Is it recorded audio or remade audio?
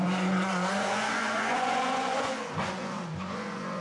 remade